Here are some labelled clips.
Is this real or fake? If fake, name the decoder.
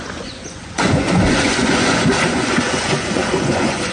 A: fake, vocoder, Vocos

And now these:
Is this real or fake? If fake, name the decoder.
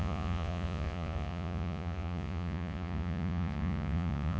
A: fake, vocoder, Vocos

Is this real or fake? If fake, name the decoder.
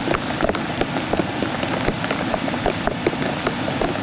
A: real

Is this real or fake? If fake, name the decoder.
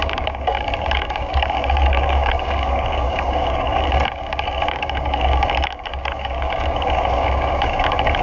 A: fake, codec, DAC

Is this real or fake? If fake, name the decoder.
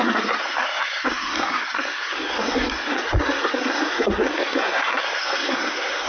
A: fake, codec, SNAC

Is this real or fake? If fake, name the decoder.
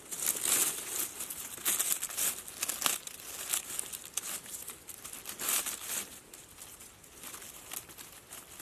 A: real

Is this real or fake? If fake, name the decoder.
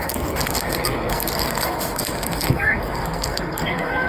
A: fake, codec, SNAC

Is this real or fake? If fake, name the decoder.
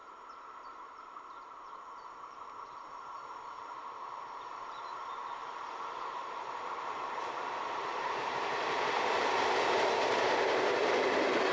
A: fake, vocoder, BigVGAN v2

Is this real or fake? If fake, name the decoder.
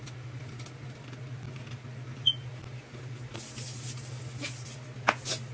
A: real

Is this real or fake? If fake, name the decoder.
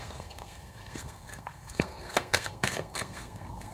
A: fake, codec, SNAC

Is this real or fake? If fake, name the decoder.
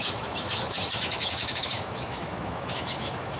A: fake, autoencoder, DAC-VAE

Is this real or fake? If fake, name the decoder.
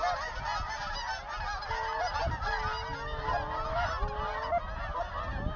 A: real